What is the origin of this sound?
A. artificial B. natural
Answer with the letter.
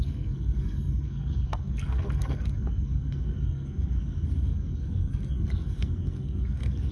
A